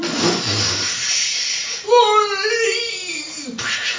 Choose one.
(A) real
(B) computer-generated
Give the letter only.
A